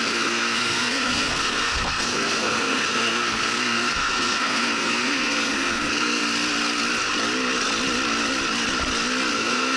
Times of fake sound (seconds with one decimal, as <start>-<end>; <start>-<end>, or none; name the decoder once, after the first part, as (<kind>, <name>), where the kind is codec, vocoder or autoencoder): 0.0-6.2 (codec, SNAC); 9.3-9.8